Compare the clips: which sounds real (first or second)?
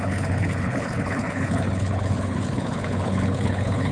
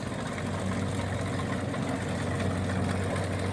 second